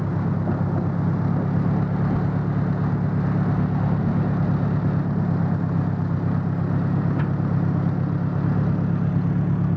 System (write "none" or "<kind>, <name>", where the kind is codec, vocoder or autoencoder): none